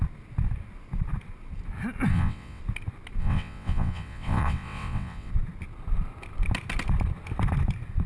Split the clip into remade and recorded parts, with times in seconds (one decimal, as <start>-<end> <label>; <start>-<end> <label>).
0.0-2.1 recorded; 2.1-2.6 remade; 2.6-3.2 recorded; 3.2-5.3 remade; 5.3-8.1 recorded